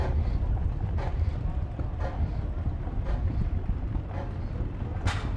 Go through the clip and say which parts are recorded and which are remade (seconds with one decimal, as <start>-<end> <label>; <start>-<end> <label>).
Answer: 0.0-3.2 remade; 3.2-5.4 recorded